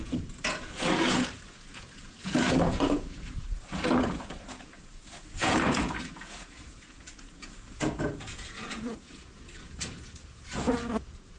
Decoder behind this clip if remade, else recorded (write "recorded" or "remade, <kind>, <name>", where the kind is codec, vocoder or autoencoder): remade, vocoder, Vocos